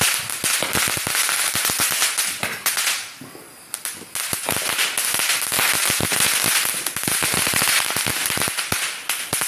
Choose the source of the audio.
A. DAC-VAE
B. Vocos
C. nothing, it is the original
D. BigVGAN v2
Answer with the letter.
C